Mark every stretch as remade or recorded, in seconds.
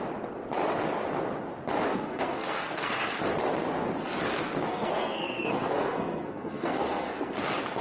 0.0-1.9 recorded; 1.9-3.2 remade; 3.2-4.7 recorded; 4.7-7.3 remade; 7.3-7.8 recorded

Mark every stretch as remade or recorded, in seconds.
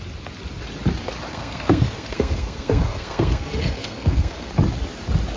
0.0-1.3 recorded; 1.3-4.5 remade; 4.5-5.4 recorded